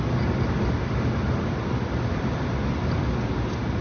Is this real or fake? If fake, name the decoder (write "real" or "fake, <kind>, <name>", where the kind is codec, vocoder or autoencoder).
real